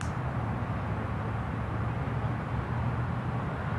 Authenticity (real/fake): real